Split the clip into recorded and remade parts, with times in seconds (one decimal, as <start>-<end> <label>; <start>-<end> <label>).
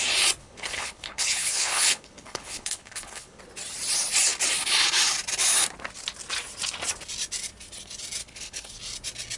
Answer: 0.0-0.4 recorded; 0.4-3.4 remade; 3.4-8.2 recorded; 8.2-8.7 remade; 8.7-9.4 recorded